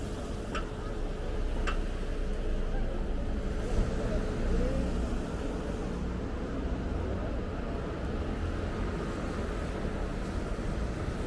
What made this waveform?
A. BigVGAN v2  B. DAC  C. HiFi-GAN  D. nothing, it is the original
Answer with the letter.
D